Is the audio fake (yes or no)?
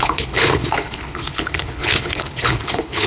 yes